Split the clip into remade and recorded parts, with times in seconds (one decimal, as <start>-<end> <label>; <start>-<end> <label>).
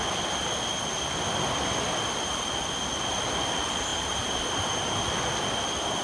0.0-6.0 recorded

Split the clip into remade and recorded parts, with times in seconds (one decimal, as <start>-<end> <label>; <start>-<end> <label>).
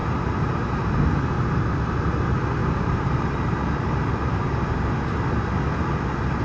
0.0-0.9 remade; 0.9-2.6 recorded; 2.6-3.2 remade; 3.2-6.4 recorded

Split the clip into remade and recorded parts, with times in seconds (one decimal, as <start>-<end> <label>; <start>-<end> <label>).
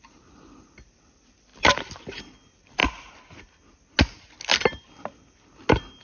0.0-2.8 remade; 2.8-6.0 recorded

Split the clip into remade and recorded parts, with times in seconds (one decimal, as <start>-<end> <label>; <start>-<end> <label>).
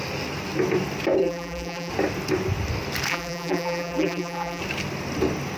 0.0-1.2 recorded; 1.2-1.9 remade; 1.9-3.1 recorded; 3.1-4.6 remade; 4.6-5.6 recorded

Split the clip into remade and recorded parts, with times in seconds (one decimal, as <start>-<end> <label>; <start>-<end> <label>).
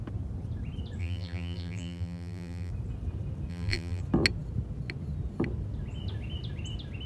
0.0-1.0 recorded; 1.0-2.7 remade; 2.7-3.5 recorded; 3.5-4.0 remade; 4.0-7.1 recorded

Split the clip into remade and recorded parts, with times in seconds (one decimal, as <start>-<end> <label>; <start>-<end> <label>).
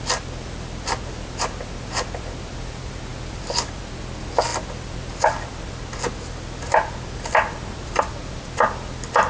0.0-9.3 recorded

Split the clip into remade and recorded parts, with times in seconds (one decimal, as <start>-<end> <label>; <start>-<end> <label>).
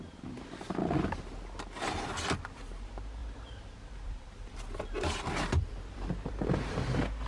0.0-3.2 recorded; 3.2-7.3 remade